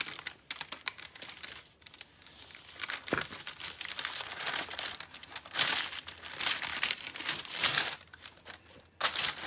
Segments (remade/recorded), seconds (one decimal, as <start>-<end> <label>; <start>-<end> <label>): 0.0-6.7 recorded; 6.7-8.4 remade; 8.4-9.5 recorded